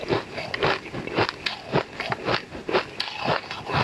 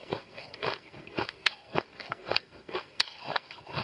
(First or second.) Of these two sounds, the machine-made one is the second